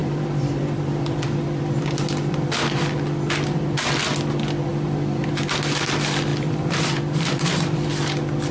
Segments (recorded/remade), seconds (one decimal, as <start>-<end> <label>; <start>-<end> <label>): 0.0-1.6 remade; 1.6-4.7 recorded; 4.7-5.3 remade; 5.3-6.3 recorded; 6.3-7.9 remade; 7.9-8.5 recorded